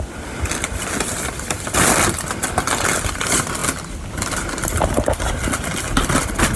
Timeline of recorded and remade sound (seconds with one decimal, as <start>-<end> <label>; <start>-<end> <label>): 0.0-6.6 recorded